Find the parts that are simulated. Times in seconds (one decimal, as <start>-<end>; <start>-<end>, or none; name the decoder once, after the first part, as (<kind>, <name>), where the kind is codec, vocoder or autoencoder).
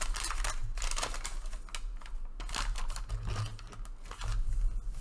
none